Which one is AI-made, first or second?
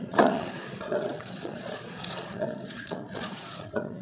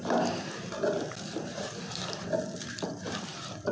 first